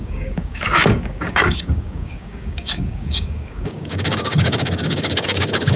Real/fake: fake